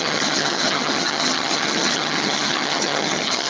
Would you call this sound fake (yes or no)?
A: yes